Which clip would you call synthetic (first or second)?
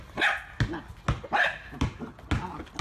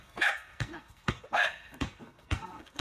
second